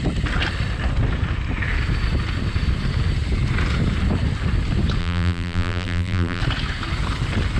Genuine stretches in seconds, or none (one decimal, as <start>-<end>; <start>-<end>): 0.0-5.0; 6.4-7.6